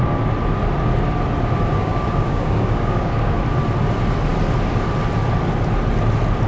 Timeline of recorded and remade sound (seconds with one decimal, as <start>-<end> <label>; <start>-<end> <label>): 0.0-1.7 recorded; 1.7-3.4 remade; 3.4-6.5 recorded